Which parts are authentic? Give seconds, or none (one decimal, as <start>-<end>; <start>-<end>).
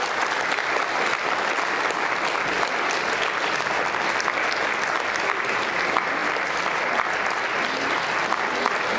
0.0-9.0